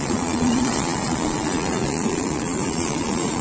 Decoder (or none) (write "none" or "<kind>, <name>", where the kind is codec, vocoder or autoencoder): vocoder, Vocos